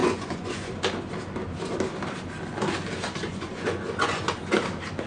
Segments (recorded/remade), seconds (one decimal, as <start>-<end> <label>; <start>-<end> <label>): 0.0-0.7 remade; 0.7-3.3 recorded; 3.3-4.3 remade; 4.3-5.1 recorded